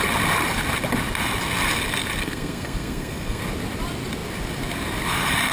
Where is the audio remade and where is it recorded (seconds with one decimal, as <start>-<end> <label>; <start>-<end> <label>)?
0.0-2.2 recorded; 2.2-3.4 remade; 3.4-5.5 recorded